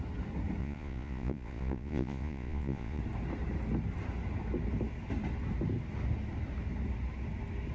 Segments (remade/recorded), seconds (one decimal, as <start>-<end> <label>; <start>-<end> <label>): 0.0-0.6 recorded; 0.6-3.0 remade; 3.0-7.7 recorded